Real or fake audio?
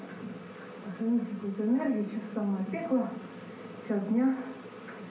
real